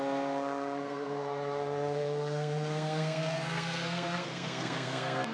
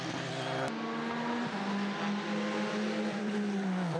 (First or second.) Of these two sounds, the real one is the second